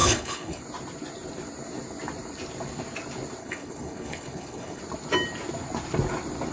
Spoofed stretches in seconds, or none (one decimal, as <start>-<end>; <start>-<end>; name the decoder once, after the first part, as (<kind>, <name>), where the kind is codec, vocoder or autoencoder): 0.0-0.6 (codec, HILCodec); 3.4-4.8